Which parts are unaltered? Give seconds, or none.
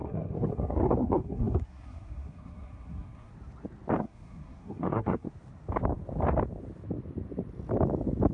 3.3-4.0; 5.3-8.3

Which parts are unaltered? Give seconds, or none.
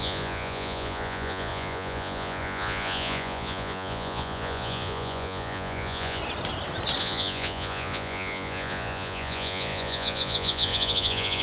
6.2-7.0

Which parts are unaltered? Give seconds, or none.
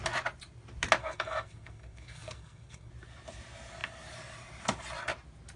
0.0-1.0; 2.9-5.6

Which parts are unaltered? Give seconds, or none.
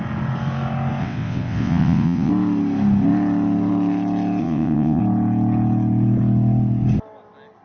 0.0-1.0; 2.3-4.4; 5.0-7.6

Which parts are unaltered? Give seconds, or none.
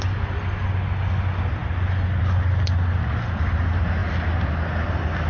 0.0-5.3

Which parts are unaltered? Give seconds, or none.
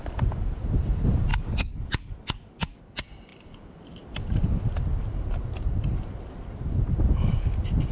0.0-1.3; 2.8-7.9